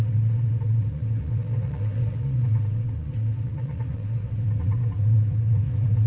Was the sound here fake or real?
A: fake